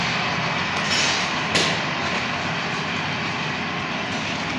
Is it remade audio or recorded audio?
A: recorded